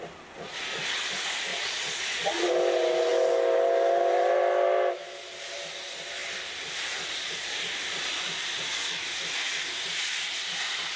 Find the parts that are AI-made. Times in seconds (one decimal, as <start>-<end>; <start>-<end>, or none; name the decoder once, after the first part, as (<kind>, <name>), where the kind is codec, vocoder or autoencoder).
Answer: 1.5-2.5 (vocoder, Vocos)